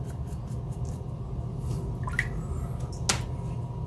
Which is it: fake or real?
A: real